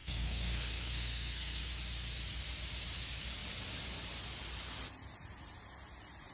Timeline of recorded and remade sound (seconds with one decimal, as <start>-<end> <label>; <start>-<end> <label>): 0.0-1.7 remade; 1.7-6.3 recorded